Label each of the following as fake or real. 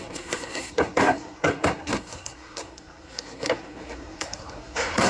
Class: fake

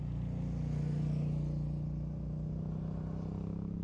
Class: real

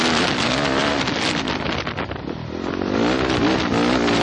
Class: real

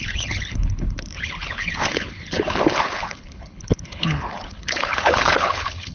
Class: fake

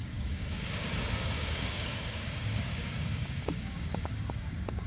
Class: fake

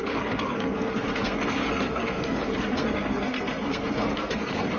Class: fake